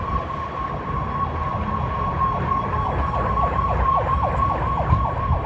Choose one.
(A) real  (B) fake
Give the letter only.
A